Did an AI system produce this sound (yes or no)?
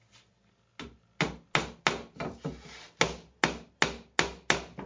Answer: no